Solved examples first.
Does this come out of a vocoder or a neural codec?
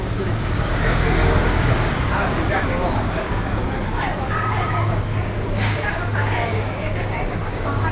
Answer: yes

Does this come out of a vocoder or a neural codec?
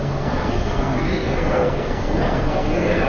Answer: yes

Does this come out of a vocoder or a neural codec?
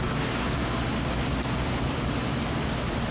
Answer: no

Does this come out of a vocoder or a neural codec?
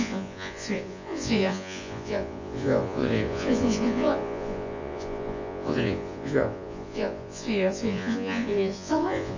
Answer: yes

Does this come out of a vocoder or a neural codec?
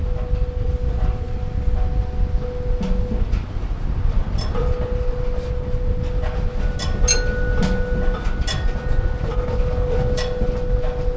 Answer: no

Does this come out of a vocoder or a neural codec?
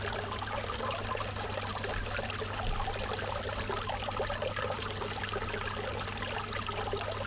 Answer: no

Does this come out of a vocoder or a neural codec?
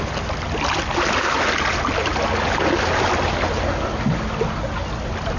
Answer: no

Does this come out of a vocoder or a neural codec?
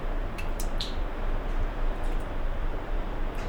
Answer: yes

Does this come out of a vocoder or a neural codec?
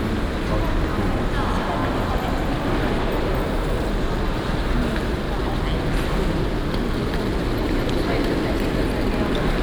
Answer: no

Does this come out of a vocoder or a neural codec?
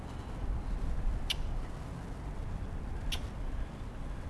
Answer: no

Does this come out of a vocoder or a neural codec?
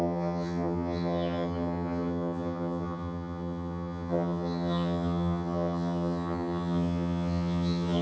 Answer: yes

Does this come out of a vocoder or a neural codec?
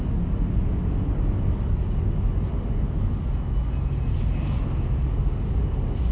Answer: no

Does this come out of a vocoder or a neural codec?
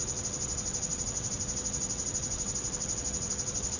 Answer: yes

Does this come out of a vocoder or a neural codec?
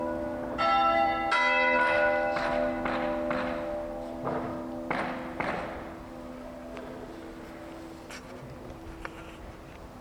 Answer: no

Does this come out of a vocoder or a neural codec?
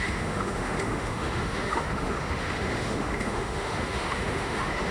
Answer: yes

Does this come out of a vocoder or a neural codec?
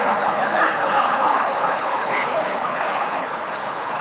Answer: yes